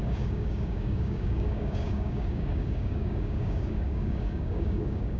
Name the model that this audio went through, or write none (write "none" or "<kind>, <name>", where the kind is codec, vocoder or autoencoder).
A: codec, DAC